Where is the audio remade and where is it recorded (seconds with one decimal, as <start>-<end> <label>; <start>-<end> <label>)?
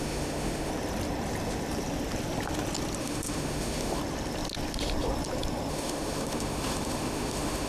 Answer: 0.0-0.7 remade; 0.7-3.0 recorded; 3.0-4.0 remade; 4.0-5.7 recorded; 5.7-7.7 remade